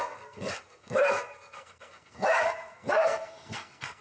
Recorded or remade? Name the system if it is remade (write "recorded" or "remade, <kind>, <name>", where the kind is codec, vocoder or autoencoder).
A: remade, codec, SNAC